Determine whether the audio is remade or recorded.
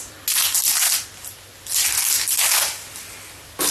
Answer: recorded